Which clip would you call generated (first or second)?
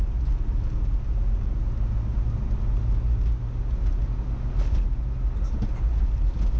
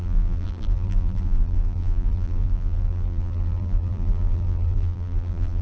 second